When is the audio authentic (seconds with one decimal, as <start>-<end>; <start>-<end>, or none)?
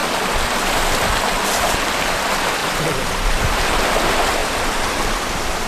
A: 0.0-2.6; 3.8-4.4